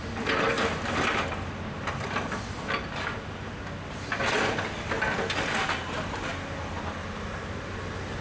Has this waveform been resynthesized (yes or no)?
no